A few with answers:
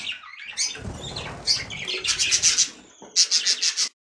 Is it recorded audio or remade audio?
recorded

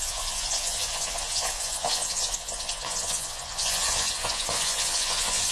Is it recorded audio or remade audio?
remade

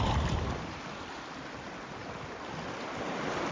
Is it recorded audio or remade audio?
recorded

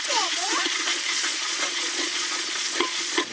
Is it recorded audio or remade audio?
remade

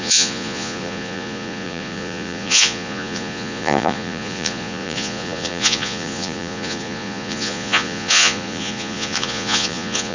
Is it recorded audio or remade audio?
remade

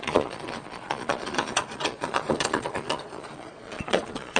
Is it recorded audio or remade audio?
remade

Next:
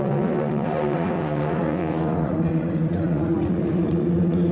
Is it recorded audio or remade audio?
remade